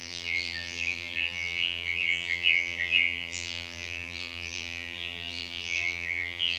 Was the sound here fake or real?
fake